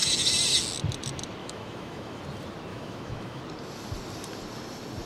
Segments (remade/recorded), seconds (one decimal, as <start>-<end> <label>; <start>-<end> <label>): 0.0-1.4 recorded; 1.4-2.2 remade; 2.2-2.7 recorded; 2.7-3.4 remade; 3.4-5.1 recorded